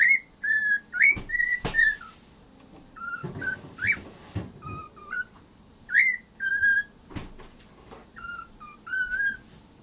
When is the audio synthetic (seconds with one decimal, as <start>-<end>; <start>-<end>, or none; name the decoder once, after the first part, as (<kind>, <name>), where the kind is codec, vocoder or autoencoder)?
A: none